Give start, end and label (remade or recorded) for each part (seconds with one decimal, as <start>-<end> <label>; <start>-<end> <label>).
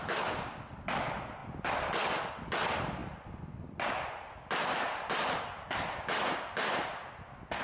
0.0-7.6 recorded